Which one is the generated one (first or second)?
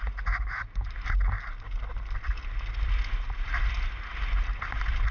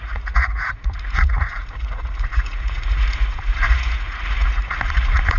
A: second